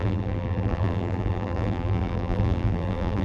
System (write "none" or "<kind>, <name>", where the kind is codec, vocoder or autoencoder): vocoder, BigVGAN v2